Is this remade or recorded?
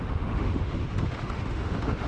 remade